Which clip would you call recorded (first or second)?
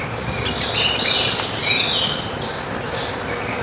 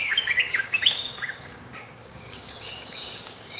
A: first